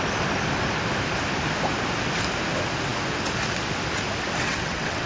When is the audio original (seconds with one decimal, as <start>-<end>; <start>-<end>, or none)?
0.0-4.4